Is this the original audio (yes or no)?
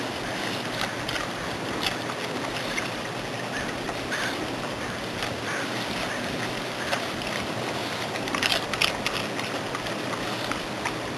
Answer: yes